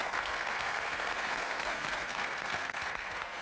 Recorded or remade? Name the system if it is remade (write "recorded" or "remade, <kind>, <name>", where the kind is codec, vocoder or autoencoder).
remade, codec, SNAC